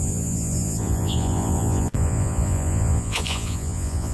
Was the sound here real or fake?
fake